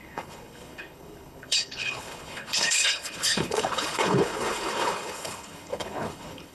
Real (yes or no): no